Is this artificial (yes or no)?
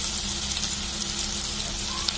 no